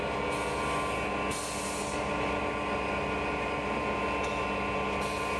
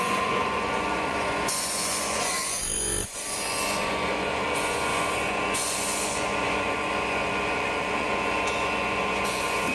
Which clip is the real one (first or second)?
first